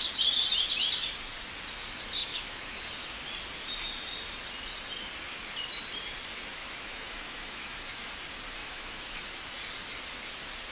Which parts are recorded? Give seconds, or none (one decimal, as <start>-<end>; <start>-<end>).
0.0-2.2; 2.8-6.6; 8.1-8.6; 9.2-10.7